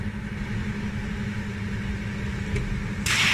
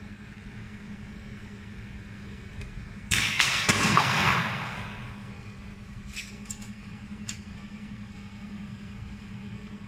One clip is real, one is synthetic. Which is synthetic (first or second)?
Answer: second